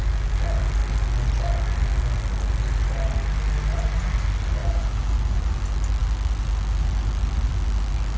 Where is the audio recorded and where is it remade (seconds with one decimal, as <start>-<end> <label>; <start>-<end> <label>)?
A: 0.0-8.2 recorded